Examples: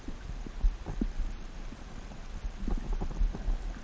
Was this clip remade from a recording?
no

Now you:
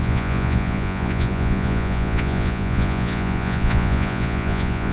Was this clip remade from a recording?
yes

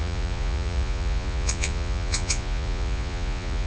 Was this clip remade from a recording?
yes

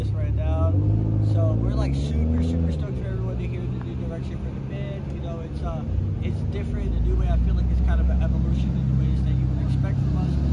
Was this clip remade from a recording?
no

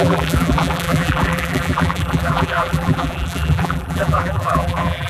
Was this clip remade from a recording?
yes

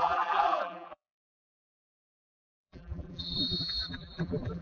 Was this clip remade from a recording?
yes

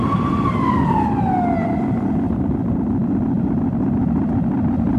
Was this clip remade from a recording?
no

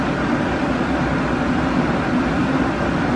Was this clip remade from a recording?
no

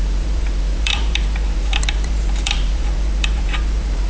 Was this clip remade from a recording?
yes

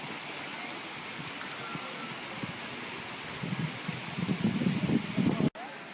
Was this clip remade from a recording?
no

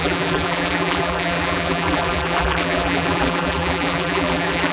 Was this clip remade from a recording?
yes